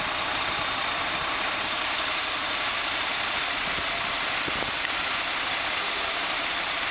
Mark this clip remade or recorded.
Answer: remade